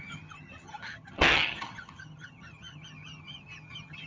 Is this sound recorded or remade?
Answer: remade